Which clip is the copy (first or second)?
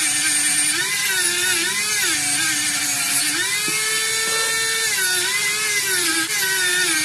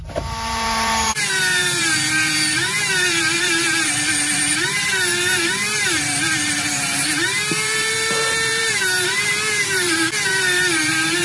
second